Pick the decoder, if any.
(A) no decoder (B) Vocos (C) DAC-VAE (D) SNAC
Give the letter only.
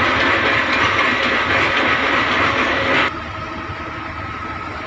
A